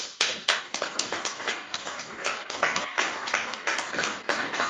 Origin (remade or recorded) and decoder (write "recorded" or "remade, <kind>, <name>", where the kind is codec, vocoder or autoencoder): remade, codec, DAC